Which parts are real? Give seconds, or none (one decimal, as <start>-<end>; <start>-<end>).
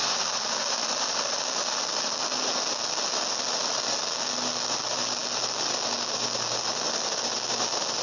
0.0-8.0